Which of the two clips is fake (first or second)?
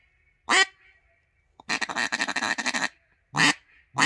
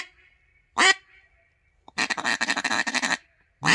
second